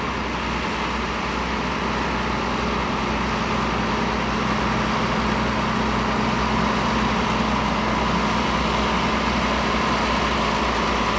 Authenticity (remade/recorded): recorded